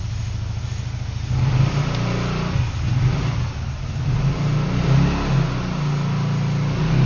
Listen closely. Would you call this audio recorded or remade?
recorded